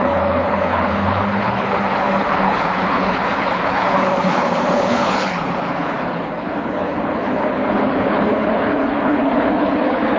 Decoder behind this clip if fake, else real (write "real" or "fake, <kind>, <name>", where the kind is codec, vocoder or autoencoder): fake, codec, HILCodec